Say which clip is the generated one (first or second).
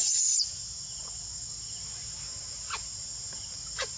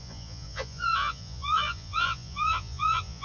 second